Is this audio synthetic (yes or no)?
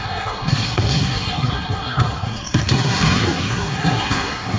yes